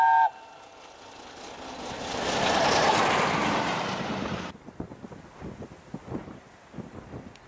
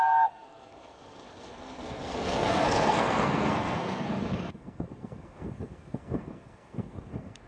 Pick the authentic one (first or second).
first